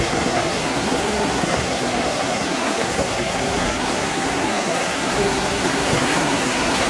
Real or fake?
fake